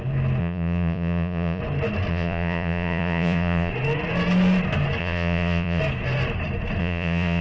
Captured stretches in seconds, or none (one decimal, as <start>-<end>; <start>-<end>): 0.0-0.4; 1.6-2.1; 3.7-5.0; 5.8-6.8